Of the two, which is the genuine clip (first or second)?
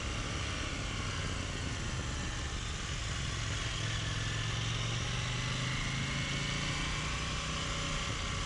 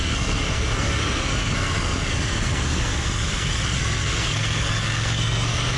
first